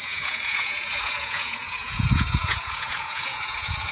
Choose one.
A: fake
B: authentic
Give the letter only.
A